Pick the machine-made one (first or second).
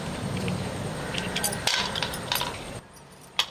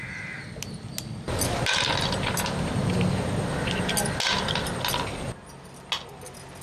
first